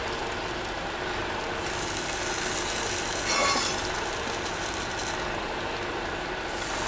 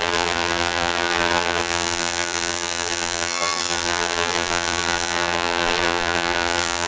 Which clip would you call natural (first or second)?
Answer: first